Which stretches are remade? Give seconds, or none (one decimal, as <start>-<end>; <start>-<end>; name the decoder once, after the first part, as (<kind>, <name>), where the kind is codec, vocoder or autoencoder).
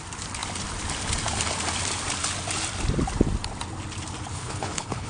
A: 4.3-5.1 (codec, HILCodec)